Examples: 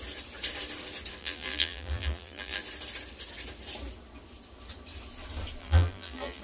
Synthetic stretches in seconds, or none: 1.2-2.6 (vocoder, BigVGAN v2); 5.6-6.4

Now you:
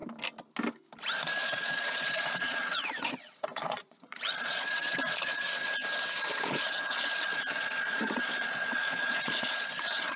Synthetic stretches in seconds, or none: 1.4-5.8 (vocoder, Vocos); 6.3-10.2

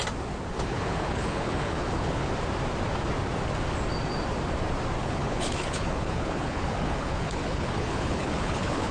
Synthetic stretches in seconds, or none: 0.5-2.3 (codec, HILCodec); 5.0-8.9

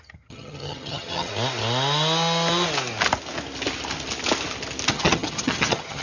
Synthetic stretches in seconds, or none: 0.0-1.3 (vocoder, HiFi-GAN); 4.9-6.0